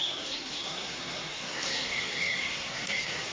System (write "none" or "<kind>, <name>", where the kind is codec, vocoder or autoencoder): codec, SNAC